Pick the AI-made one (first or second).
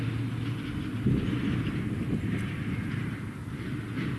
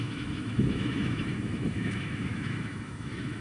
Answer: second